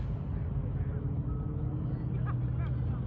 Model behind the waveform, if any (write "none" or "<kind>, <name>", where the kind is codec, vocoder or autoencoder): none